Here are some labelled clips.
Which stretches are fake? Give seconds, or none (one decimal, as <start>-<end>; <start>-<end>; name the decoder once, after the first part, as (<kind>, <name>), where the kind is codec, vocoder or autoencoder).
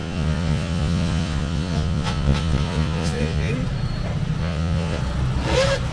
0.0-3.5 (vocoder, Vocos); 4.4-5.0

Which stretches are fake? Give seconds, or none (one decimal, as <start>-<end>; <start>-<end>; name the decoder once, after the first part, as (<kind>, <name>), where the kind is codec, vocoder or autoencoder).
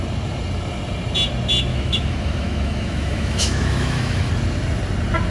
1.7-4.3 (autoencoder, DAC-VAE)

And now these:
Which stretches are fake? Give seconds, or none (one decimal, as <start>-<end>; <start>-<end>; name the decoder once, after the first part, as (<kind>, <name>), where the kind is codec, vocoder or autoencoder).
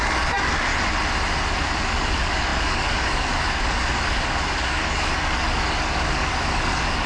0.0-0.7 (codec, DAC); 1.8-7.1